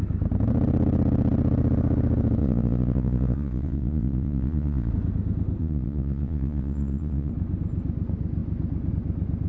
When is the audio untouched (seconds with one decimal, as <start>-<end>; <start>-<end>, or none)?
0.0-2.4; 4.9-5.6; 7.3-9.5